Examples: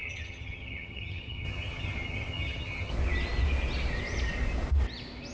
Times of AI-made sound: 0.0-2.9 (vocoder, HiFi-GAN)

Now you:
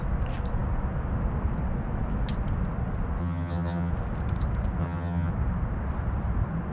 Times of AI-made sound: 3.2-3.9 (vocoder, HiFi-GAN); 4.8-5.3

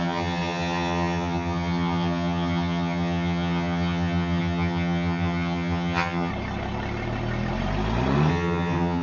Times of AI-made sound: 0.0-6.3 (vocoder, HiFi-GAN); 8.3-9.0

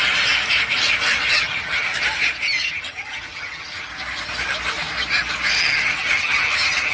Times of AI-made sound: 1.3-1.9 (vocoder, HiFi-GAN); 2.7-3.9; 5.6-6.9